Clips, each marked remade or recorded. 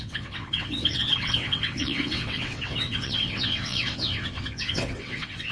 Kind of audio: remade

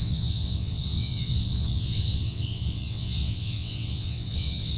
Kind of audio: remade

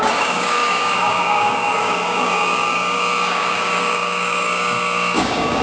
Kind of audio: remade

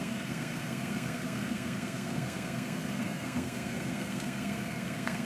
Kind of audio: remade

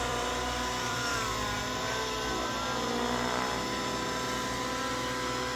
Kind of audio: remade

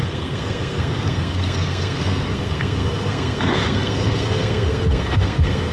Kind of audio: remade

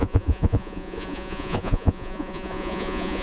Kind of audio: remade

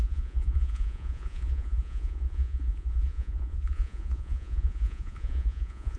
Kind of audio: remade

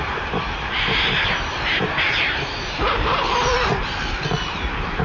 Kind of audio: remade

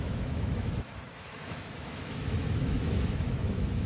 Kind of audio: remade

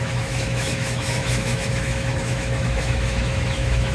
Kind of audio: remade